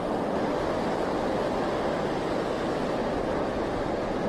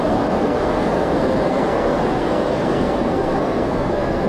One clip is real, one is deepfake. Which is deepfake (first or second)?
second